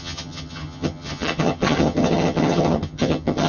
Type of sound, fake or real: fake